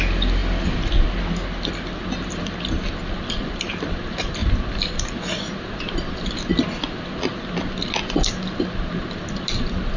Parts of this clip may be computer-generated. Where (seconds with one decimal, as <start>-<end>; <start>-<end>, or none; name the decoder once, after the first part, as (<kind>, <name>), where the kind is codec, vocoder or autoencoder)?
none